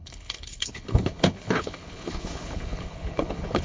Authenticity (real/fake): fake